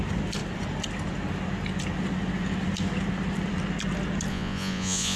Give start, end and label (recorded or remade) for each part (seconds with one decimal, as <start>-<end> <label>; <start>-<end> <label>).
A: 0.0-4.3 recorded; 4.3-5.2 remade